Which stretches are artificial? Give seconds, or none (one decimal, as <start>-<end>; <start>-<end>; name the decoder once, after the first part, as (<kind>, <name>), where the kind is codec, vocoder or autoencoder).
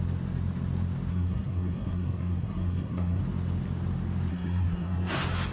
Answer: 1.1-3.2 (codec, SNAC); 4.3-5.1